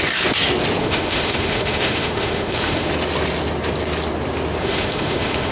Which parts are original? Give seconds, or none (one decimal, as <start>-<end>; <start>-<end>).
0.0-0.8; 2.9-4.6